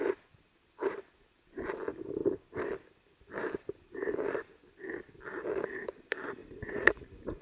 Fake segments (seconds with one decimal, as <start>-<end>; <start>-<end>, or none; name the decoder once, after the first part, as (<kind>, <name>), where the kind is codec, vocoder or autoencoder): 6.4-7.0 (vocoder, Vocos)